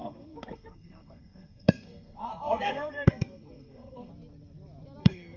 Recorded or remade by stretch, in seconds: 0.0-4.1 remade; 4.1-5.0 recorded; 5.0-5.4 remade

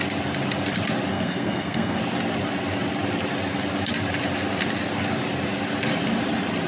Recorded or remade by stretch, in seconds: 0.0-1.1 recorded; 1.1-2.0 remade; 2.0-6.7 recorded

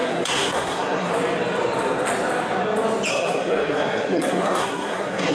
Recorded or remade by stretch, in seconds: 0.0-1.1 remade; 1.1-3.1 recorded; 3.1-5.3 remade

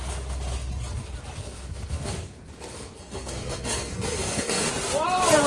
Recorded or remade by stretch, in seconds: 0.0-1.4 recorded; 1.4-4.7 remade; 4.7-5.5 recorded

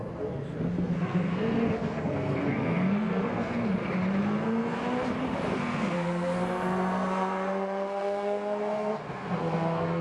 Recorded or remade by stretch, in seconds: 0.0-0.7 recorded; 0.7-3.7 remade; 3.7-4.2 recorded; 4.2-4.8 remade; 4.8-5.6 recorded; 5.6-10.0 remade